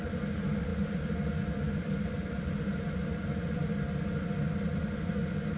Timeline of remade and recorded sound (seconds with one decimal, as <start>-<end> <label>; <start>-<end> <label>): 0.0-5.6 recorded